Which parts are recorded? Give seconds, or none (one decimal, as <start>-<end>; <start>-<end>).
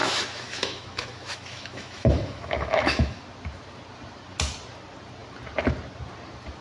3.2-6.6